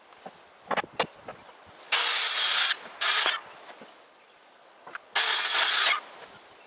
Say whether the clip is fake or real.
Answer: real